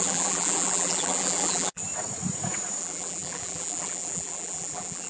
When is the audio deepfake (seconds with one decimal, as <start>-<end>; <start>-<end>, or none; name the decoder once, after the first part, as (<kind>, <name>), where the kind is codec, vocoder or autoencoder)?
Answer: 0.0-1.8 (vocoder, BigVGAN v2); 2.8-5.1